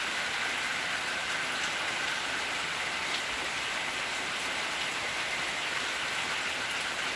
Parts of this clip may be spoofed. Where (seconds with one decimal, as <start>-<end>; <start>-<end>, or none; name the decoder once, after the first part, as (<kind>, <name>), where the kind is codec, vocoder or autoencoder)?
none